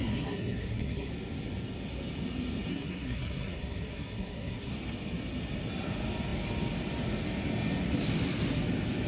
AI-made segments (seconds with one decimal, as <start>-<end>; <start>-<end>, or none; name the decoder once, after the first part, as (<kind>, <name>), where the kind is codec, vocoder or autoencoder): 0.0-1.1 (codec, SNAC); 2.7-4.7